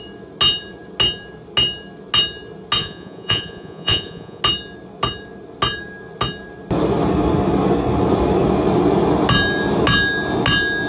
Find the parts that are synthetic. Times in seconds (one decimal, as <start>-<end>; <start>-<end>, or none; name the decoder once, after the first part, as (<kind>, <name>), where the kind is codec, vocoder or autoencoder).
2.8-4.4 (vocoder, Vocos)